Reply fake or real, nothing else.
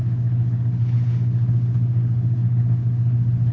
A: fake